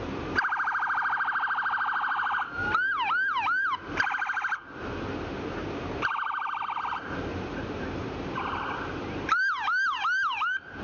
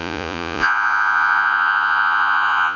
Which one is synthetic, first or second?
second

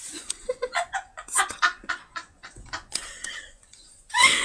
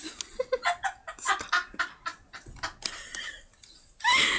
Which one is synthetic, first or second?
first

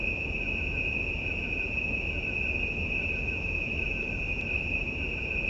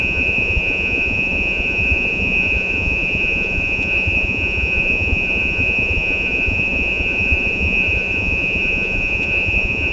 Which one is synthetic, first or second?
second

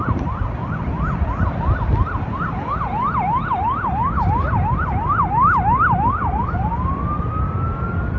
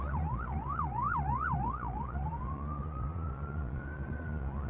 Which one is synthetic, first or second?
second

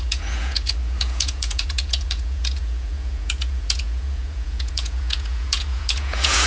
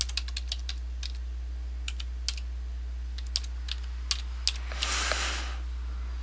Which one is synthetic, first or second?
first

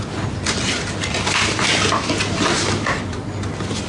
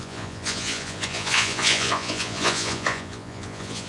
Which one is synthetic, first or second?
second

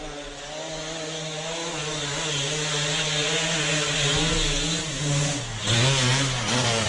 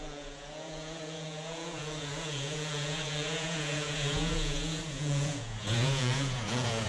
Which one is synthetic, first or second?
second